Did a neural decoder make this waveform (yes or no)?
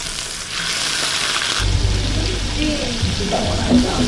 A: no